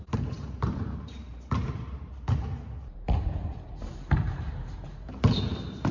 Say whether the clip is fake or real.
fake